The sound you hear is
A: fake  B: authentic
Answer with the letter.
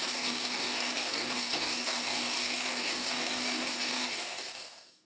A